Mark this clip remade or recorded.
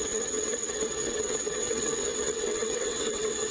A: remade